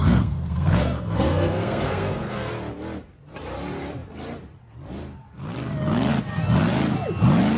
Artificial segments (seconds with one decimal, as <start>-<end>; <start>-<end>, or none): 0.0-2.5